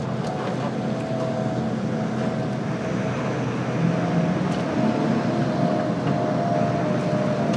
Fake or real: real